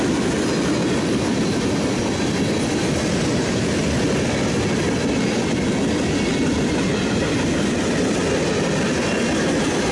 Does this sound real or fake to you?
real